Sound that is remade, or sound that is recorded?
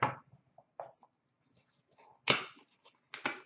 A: recorded